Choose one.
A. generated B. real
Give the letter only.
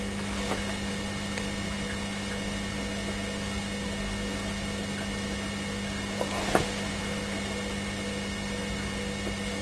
B